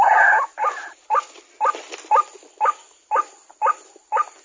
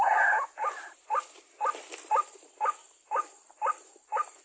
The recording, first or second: first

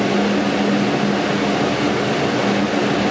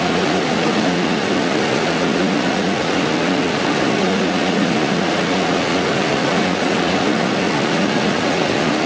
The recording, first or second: first